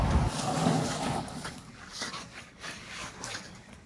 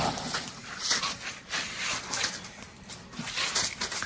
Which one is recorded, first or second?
second